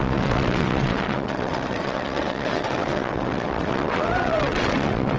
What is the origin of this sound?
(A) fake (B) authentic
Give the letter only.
A